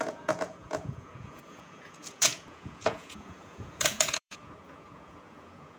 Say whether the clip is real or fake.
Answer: fake